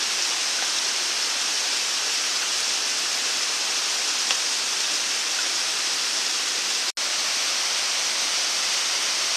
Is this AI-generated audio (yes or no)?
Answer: no